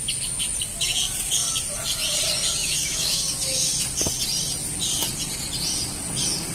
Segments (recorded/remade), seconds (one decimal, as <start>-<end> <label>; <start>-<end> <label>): 0.0-2.6 recorded; 2.6-3.7 remade; 3.7-6.5 recorded